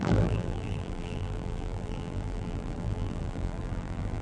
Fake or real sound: fake